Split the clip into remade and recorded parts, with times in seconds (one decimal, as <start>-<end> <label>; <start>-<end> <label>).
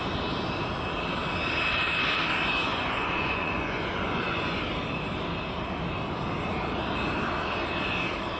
0.0-2.7 recorded; 2.7-4.6 remade; 4.6-8.4 recorded